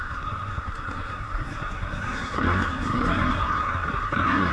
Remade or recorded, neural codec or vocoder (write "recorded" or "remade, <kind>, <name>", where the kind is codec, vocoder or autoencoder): remade, codec, SNAC